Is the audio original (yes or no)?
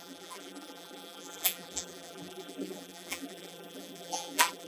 no